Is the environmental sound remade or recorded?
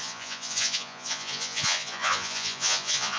remade